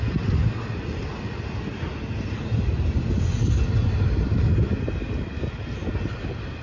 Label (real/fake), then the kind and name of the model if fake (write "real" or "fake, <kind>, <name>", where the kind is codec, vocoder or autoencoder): real